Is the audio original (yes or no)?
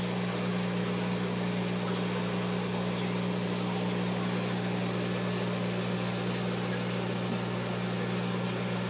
yes